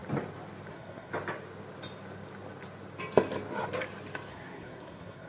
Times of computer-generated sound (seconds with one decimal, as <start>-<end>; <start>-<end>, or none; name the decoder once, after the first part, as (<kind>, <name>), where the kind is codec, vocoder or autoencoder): 0.7-1.1 (codec, SNAC); 4.3-5.3